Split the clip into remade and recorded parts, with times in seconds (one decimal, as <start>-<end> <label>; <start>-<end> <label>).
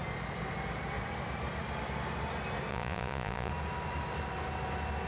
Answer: 0.0-2.7 recorded; 2.7-3.5 remade; 3.5-5.1 recorded